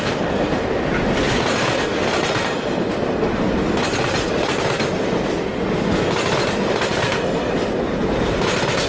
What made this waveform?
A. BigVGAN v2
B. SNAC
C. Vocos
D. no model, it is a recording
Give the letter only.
D